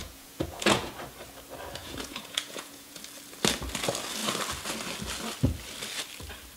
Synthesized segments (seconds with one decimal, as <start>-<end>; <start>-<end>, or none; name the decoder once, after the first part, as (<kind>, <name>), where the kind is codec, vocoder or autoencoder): 0.0-0.9 (vocoder, Vocos); 1.8-3.0